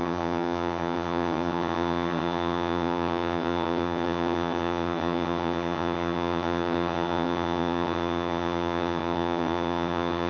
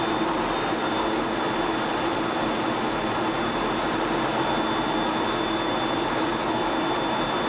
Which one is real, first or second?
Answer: second